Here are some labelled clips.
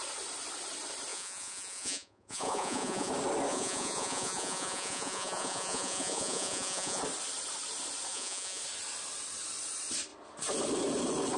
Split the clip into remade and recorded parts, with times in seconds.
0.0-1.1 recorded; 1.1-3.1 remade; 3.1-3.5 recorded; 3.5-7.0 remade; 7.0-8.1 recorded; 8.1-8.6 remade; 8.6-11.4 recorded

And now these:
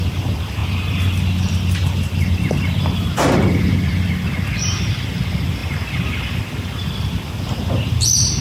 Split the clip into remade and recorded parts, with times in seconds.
0.0-8.4 recorded